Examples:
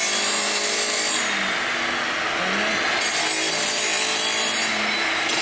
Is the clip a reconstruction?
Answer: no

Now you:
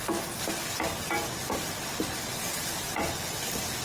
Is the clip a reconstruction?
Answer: no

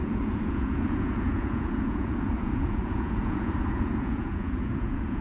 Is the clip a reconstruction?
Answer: yes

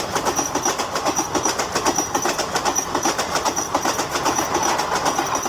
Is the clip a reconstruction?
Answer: no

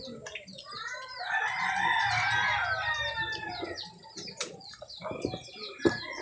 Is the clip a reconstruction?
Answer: no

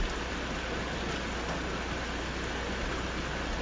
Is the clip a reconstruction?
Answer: no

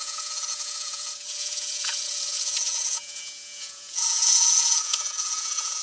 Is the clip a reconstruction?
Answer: yes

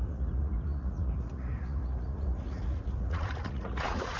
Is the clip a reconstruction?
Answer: yes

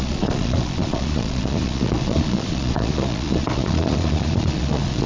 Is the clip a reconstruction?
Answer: yes